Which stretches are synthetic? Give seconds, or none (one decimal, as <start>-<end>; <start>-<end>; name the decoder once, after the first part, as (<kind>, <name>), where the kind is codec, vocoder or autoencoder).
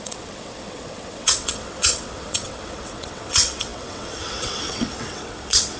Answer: 0.0-5.8 (vocoder, WaveNeXt)